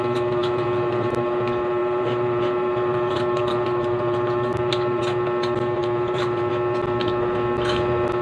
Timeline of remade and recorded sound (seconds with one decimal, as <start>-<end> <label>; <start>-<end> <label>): 0.0-0.4 recorded; 0.4-1.4 remade; 1.4-1.8 recorded; 1.8-5.0 remade; 5.0-5.8 recorded; 5.8-6.4 remade; 6.4-8.2 recorded